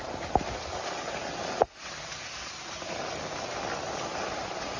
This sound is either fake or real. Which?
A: real